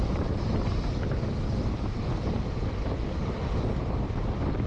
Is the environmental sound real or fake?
real